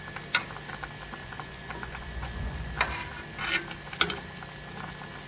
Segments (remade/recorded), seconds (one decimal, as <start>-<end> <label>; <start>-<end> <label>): 0.0-1.2 recorded; 1.2-2.7 remade; 2.7-5.3 recorded